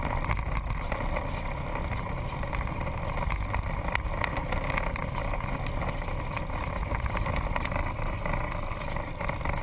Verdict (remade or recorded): recorded